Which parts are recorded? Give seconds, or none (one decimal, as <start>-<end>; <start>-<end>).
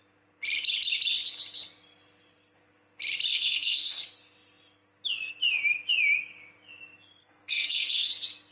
0.0-3.3; 4.0-7.2; 8.1-8.5